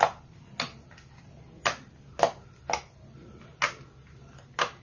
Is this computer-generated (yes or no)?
no